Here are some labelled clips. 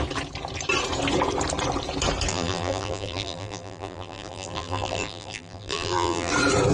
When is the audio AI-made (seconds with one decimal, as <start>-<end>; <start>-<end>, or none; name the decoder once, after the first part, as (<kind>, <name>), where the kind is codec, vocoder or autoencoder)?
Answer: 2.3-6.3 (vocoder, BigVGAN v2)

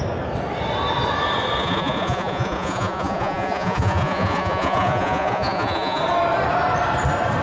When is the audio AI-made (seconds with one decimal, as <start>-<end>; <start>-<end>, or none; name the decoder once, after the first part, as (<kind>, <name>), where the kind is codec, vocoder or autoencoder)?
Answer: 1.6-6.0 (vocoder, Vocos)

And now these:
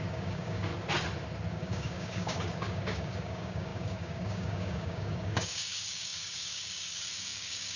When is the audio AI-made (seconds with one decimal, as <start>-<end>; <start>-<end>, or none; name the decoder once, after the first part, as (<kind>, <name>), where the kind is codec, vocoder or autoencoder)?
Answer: 0.0-0.7 (codec, DAC); 1.5-7.8

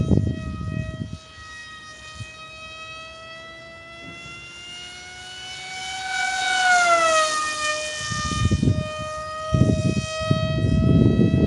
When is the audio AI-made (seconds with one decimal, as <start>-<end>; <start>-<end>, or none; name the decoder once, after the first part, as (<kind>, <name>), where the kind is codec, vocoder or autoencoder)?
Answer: none

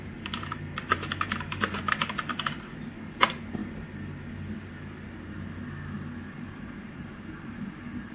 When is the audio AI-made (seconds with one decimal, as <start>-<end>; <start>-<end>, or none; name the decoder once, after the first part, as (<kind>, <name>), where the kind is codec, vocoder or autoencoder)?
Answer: 0.0-3.6 (vocoder, BigVGAN v2); 6.3-8.1